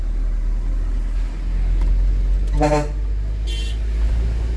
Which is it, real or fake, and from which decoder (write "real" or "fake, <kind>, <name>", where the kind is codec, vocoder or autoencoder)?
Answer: real